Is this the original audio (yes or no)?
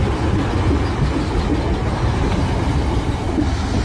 yes